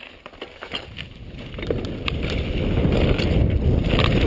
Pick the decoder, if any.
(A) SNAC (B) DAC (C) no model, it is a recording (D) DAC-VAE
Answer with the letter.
C